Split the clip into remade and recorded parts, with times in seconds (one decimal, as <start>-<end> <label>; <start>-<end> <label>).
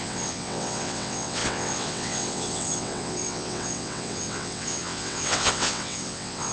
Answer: 0.0-6.5 remade